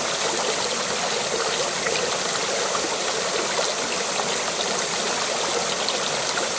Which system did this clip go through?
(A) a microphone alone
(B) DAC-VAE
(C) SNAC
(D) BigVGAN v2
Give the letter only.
A